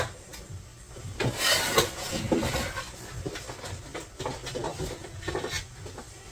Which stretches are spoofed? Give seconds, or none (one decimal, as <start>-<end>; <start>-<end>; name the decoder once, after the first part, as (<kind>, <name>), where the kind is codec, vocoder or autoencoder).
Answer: none